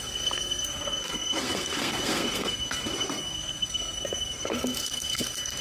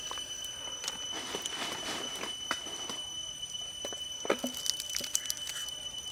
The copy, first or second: first